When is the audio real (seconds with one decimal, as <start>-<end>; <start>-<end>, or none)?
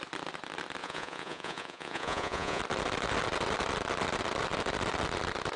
0.0-0.8; 2.6-5.6